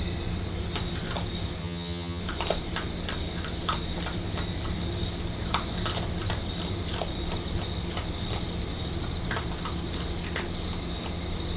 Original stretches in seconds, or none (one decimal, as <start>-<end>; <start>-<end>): 0.0-1.6; 2.2-11.6